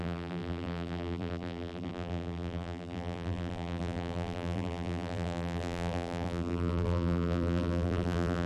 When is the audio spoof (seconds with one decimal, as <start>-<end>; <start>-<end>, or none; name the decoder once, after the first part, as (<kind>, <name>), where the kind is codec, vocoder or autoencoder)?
0.0-8.5 (vocoder, BigVGAN v2)